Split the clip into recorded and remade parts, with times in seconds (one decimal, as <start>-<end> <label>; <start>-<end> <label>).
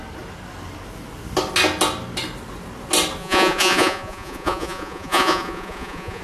0.0-3.2 recorded; 3.2-6.2 remade